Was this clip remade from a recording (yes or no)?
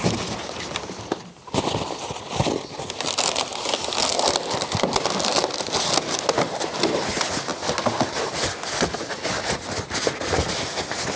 no